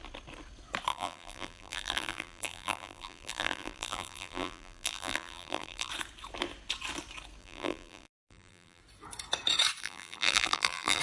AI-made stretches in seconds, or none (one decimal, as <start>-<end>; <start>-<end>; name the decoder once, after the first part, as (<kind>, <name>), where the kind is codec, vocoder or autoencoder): 0.9-5.9 (vocoder, BigVGAN v2); 7.4-8.8; 9.8-11.0